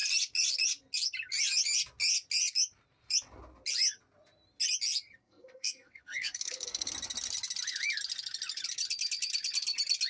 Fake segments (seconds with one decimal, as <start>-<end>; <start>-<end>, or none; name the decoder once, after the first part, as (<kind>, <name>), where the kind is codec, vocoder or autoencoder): 5.2-6.9 (codec, SNAC)